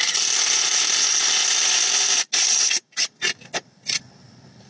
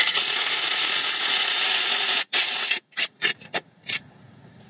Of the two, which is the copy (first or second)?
second